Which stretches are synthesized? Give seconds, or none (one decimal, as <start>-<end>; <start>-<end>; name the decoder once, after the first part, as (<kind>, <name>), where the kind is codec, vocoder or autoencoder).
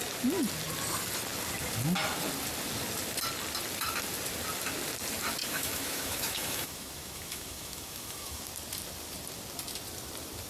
5.4-8.4 (autoencoder, DAC-VAE)